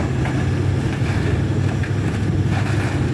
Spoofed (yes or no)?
no